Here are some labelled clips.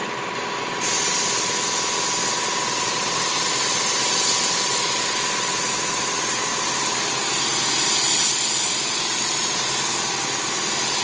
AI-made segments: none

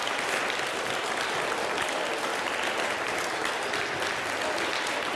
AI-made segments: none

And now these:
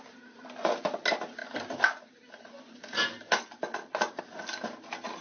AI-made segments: none